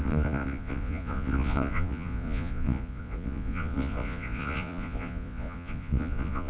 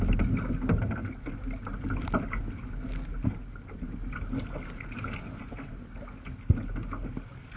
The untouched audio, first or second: second